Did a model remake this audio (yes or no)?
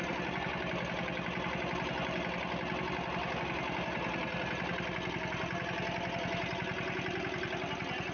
no